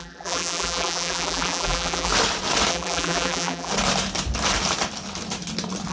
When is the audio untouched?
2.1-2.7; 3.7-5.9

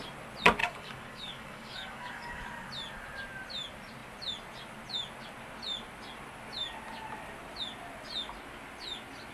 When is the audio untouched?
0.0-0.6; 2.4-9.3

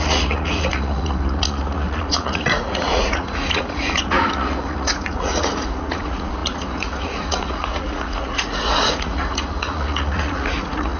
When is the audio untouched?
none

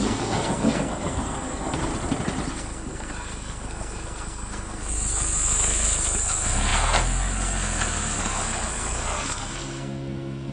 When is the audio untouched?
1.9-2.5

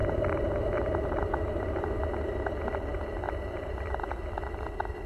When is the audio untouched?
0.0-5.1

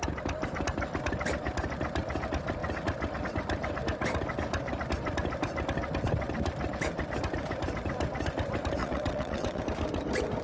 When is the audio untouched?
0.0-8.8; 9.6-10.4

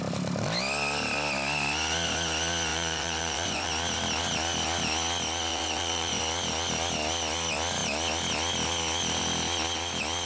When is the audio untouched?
0.0-2.7; 3.7-5.5; 6.2-10.3